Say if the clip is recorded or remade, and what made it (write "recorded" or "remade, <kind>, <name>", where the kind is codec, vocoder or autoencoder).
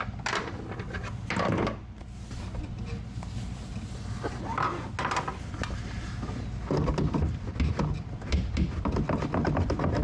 recorded